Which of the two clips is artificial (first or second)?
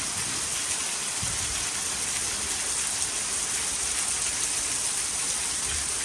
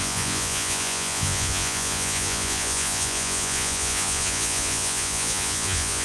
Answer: second